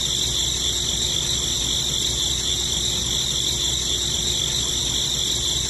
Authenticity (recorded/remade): recorded